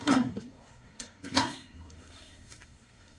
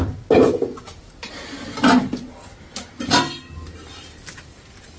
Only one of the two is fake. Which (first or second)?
first